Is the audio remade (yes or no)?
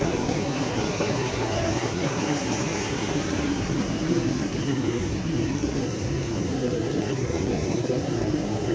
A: yes